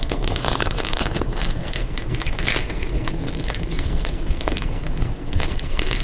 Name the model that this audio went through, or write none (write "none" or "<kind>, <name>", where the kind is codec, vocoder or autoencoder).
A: codec, SNAC